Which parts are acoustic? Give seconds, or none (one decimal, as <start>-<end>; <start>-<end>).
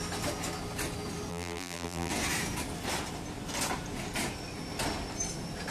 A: 0.0-1.3; 2.1-5.7